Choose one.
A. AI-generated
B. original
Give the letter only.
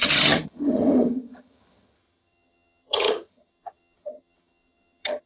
A